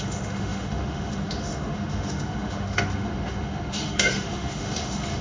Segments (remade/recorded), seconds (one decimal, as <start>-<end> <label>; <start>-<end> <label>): 0.0-5.2 remade